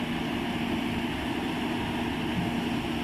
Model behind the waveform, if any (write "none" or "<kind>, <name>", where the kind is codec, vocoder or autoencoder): none